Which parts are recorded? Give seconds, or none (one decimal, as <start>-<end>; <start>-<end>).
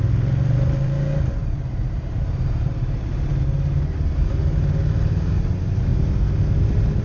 0.0-1.4; 2.7-7.0